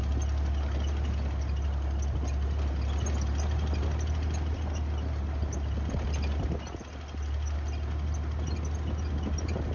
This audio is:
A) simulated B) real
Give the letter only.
B